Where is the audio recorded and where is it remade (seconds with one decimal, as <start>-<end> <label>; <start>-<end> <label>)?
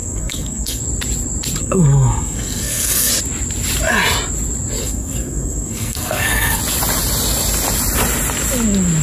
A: 0.0-0.8 remade; 0.8-1.6 recorded; 1.6-3.1 remade; 3.1-4.8 recorded; 4.8-6.6 remade; 6.6-9.0 recorded